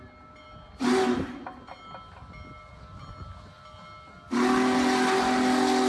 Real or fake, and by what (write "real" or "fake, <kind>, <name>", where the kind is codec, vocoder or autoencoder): real